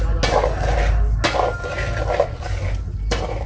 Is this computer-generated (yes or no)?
no